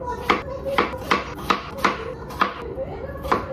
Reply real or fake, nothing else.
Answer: real